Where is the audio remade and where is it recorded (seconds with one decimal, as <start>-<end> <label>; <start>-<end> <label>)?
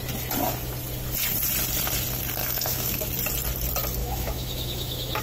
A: 0.0-2.4 recorded; 2.4-3.1 remade; 3.1-4.0 recorded; 4.0-5.2 remade